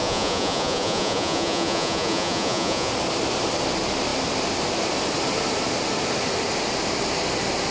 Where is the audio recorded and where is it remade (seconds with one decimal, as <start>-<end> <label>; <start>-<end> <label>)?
0.0-2.9 remade; 2.9-7.7 recorded